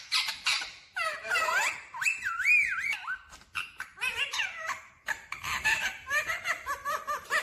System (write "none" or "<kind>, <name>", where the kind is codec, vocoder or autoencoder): vocoder, BigVGAN v2